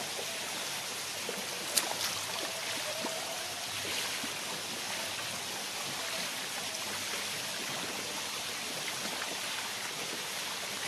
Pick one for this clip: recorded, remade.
recorded